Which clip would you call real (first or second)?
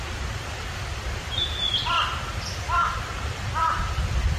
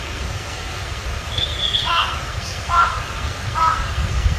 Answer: first